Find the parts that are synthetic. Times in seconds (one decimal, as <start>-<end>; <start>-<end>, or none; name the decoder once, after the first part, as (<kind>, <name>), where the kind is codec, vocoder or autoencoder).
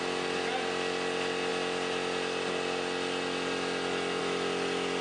none